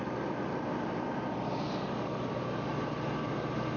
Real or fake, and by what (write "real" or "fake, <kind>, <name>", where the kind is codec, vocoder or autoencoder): real